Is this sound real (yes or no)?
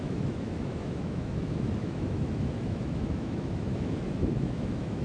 no